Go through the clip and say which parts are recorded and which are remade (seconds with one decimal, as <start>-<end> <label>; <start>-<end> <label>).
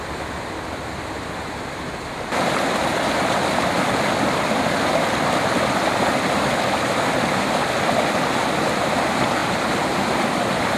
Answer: 0.0-9.4 remade; 9.4-10.1 recorded; 10.1-10.8 remade